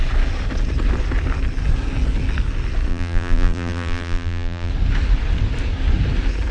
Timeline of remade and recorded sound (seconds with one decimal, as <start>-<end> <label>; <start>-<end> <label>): 0.0-2.9 recorded; 2.9-4.7 remade; 4.7-6.5 recorded